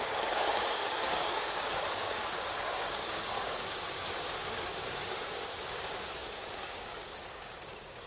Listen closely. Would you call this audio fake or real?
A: fake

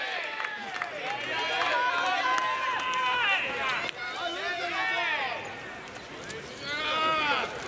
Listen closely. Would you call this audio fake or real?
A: real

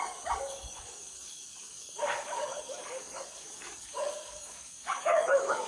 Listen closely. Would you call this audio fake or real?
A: fake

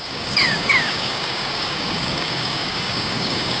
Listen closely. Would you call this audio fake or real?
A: fake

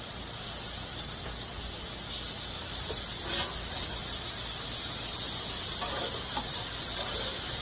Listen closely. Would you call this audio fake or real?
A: real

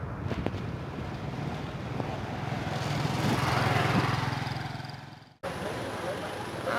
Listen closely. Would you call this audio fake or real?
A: real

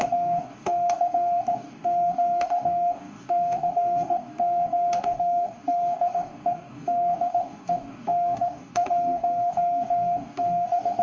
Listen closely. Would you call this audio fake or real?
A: fake